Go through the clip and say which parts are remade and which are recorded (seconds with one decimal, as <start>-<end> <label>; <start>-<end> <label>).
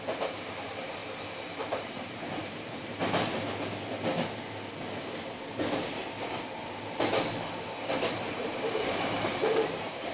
0.0-1.0 remade; 1.0-1.5 recorded; 1.5-3.0 remade; 3.0-8.1 recorded; 8.1-10.1 remade